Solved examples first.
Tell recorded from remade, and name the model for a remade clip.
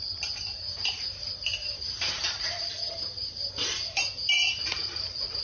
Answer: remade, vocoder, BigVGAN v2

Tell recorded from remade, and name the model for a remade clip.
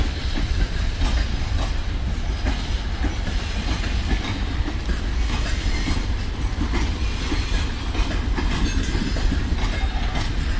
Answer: recorded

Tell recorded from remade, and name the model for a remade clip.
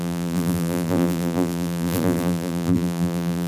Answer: remade, vocoder, BigVGAN v2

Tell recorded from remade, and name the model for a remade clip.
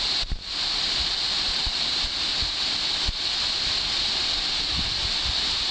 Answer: recorded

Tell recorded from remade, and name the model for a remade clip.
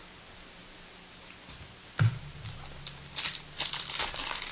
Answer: recorded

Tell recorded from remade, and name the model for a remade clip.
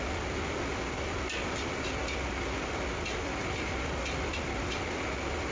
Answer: recorded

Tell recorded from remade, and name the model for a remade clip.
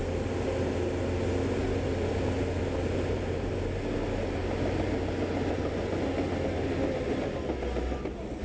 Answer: recorded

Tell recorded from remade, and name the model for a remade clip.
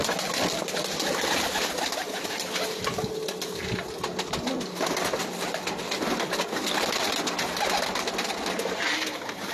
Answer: recorded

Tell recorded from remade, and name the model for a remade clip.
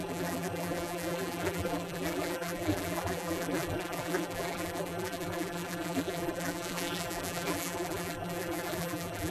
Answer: remade, vocoder, BigVGAN v2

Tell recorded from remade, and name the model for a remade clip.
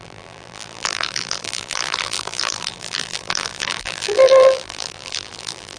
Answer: remade, vocoder, BigVGAN v2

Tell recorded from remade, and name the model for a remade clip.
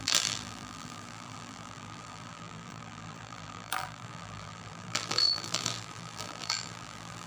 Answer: remade, vocoder, BigVGAN v2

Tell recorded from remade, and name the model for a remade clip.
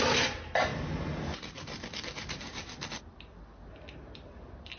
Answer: recorded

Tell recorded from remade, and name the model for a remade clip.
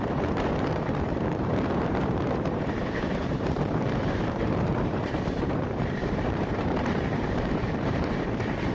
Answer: remade, vocoder, BigVGAN v2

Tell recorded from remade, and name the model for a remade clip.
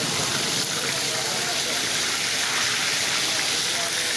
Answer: recorded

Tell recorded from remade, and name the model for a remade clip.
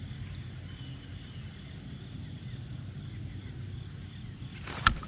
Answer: recorded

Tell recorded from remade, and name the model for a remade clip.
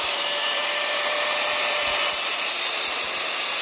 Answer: remade, vocoder, BigVGAN v2